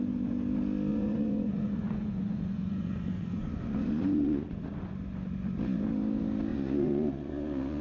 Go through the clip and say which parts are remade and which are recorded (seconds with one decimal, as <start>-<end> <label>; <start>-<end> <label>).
0.0-0.9 recorded; 0.9-4.9 remade; 4.9-6.5 recorded; 6.5-7.8 remade